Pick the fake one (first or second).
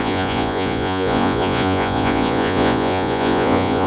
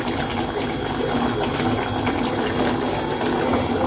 first